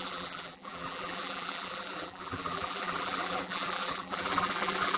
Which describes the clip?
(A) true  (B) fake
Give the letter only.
B